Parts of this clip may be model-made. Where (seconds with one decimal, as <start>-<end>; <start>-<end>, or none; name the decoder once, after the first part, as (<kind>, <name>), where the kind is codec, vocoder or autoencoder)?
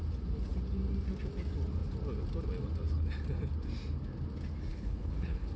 4.7-5.6 (codec, HILCodec)